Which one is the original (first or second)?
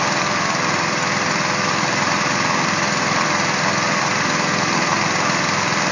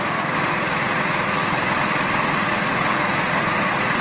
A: first